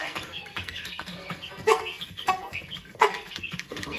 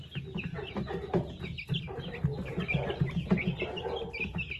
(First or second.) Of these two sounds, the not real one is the first